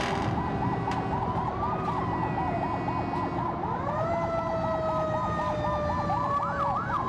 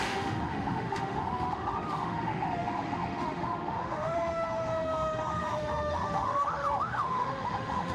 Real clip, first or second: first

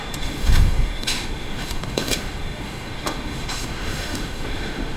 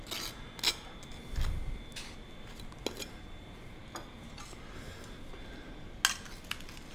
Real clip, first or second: second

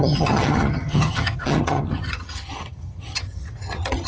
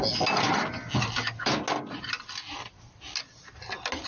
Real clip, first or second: second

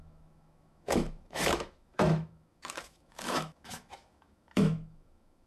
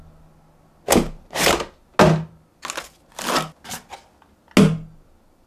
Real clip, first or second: second